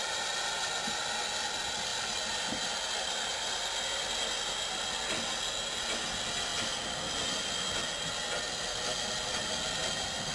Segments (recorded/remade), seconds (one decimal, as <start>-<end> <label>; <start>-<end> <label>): 0.0-10.3 recorded